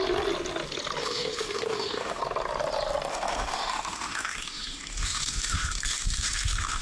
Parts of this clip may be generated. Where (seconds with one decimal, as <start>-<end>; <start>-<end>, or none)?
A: 1.0-2.2; 3.1-6.8